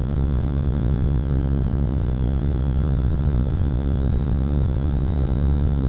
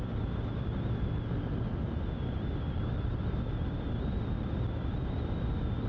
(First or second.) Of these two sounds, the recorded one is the second